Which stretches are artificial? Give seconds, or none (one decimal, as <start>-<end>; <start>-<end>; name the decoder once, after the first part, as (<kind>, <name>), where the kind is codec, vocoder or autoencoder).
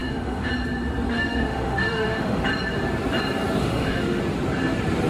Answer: 0.0-0.5 (autoencoder, DAC-VAE); 1.1-2.4; 3.6-4.2